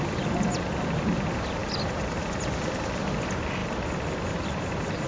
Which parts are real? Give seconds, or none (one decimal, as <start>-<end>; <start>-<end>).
0.0-3.6